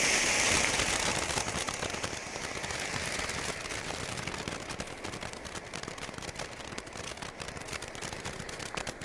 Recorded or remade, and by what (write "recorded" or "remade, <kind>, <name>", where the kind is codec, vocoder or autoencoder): recorded